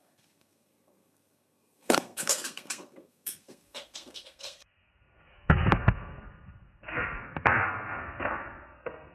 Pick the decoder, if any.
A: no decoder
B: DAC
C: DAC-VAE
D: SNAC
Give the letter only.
D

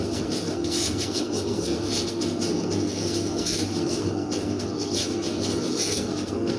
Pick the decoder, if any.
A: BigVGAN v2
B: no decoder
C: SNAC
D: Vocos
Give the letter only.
C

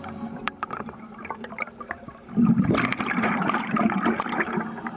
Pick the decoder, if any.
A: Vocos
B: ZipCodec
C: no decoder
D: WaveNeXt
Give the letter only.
C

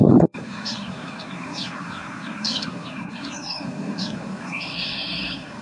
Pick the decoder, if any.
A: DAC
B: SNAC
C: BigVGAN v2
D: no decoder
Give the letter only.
B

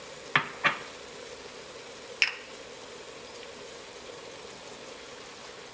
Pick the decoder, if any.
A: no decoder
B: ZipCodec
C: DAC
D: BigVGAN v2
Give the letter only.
A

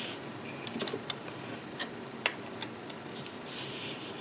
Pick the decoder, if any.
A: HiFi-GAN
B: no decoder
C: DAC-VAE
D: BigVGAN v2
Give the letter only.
B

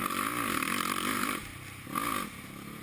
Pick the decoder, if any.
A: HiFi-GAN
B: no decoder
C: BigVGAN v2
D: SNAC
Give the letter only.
C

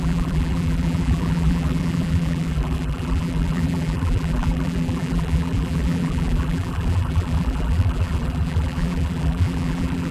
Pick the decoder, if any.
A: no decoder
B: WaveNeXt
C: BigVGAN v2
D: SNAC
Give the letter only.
C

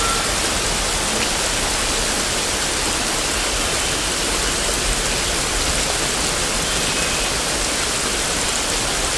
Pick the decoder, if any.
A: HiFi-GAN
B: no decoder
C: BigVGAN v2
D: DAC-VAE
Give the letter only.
B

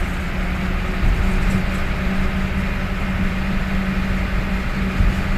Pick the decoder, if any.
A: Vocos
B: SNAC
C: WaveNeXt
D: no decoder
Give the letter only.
D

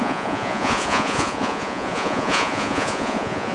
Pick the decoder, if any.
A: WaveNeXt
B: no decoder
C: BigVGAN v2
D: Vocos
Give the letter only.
D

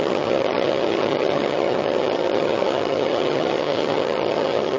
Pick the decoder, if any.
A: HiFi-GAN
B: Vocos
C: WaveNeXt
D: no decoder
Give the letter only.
A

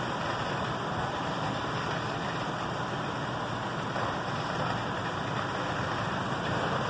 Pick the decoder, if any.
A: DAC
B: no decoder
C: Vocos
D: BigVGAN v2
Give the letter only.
B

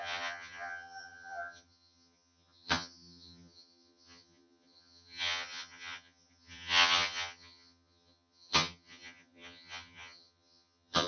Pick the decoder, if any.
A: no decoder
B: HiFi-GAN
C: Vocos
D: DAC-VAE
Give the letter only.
B